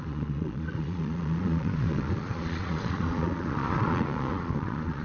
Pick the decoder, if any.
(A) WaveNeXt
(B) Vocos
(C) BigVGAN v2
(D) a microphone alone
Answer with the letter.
B